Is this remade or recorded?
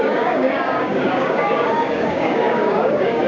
remade